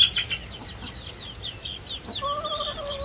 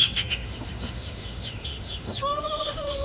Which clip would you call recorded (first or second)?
first